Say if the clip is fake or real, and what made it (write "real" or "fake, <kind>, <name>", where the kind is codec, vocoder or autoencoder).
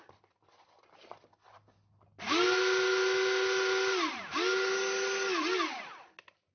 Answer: real